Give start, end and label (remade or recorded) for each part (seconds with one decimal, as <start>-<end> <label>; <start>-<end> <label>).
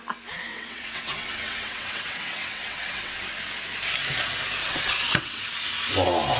0.0-0.5 recorded; 0.5-3.2 remade; 3.2-4.6 recorded; 4.6-5.4 remade; 5.4-6.4 recorded